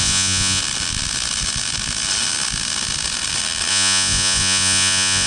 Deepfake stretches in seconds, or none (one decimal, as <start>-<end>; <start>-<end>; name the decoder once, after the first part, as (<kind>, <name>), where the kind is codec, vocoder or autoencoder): 0.0-0.6 (vocoder, Vocos); 3.7-5.3